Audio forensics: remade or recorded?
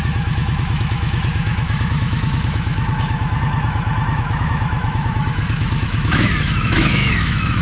remade